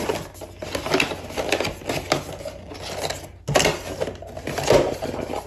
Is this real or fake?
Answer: real